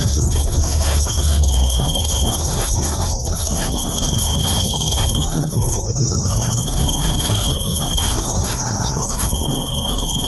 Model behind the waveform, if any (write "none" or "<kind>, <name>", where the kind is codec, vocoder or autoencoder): codec, SNAC